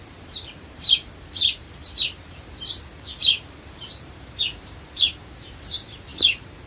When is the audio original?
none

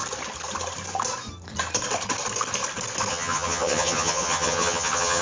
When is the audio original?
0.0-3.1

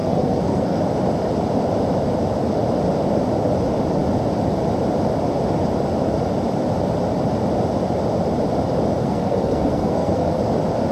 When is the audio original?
0.8-9.0; 10.4-10.9

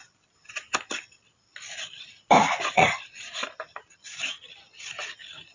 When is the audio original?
0.0-2.4; 3.3-5.5

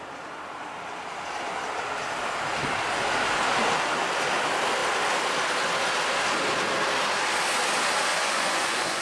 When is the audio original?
0.0-8.1

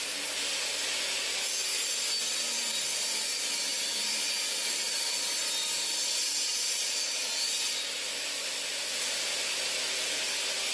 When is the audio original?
0.7-2.2

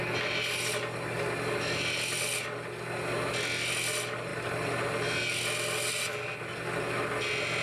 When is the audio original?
0.0-7.6